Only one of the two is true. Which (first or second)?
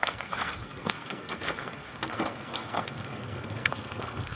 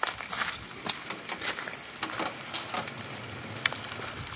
second